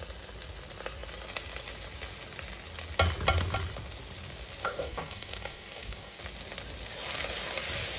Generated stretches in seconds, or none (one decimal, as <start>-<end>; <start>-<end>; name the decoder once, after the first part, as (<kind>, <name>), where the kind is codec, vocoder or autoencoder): 4.6-6.2 (codec, DAC)